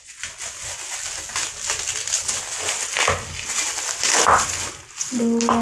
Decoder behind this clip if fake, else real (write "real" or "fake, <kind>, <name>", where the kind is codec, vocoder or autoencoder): real